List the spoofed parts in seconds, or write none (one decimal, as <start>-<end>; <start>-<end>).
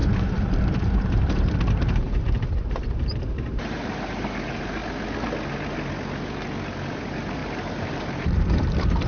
0.0-4.8; 6.9-9.1